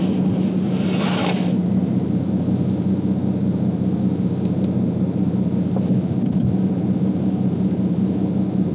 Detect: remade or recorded recorded